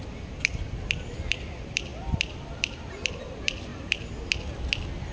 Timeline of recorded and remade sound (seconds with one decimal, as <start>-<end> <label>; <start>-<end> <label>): 0.0-5.1 recorded